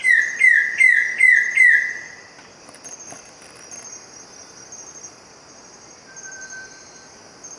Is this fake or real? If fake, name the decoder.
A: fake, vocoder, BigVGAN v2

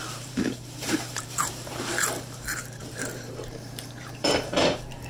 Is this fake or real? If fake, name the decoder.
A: fake, vocoder, BigVGAN v2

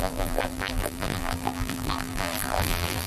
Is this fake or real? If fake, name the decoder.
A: fake, vocoder, BigVGAN v2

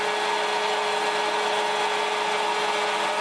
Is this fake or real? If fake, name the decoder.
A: real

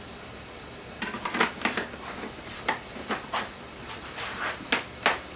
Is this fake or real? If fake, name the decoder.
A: fake, vocoder, BigVGAN v2